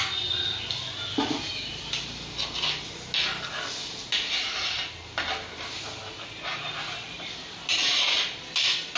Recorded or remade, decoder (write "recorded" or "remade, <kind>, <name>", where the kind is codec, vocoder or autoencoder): recorded